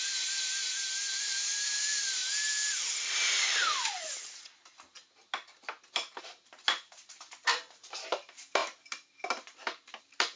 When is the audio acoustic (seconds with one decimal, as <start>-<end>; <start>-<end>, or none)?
2.2-6.2